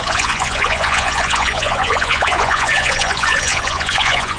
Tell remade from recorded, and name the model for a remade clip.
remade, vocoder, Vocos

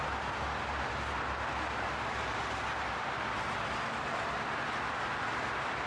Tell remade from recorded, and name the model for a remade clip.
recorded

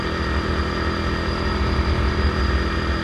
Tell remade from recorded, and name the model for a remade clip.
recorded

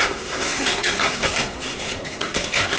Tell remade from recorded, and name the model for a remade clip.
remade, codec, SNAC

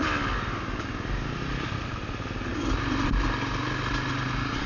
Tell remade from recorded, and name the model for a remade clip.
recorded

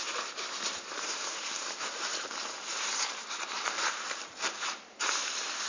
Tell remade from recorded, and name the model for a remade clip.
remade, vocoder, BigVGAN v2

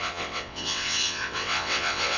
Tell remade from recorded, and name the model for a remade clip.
remade, vocoder, WaveNeXt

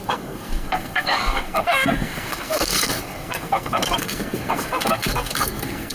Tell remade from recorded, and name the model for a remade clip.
remade, codec, SNAC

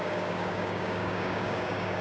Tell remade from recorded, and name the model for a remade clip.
remade, codec, DAC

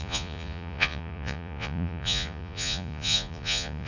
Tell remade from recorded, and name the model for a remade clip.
remade, vocoder, Vocos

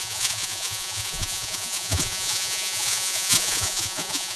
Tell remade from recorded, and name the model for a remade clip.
remade, vocoder, Vocos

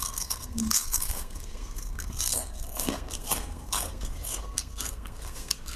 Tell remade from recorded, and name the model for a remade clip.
remade, codec, SNAC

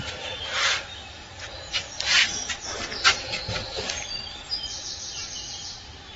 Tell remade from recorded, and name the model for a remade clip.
remade, vocoder, BigVGAN v2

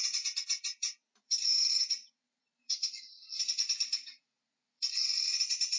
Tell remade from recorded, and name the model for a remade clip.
remade, vocoder, BigVGAN v2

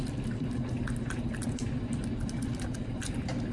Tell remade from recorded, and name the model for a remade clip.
recorded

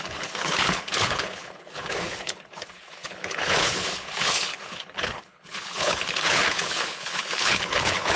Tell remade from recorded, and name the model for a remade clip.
remade, codec, HILCodec